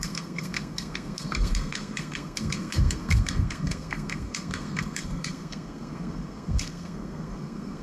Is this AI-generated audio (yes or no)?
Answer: yes